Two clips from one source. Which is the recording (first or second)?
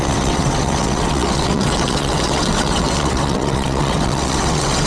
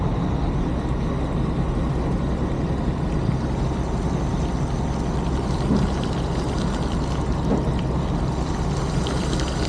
second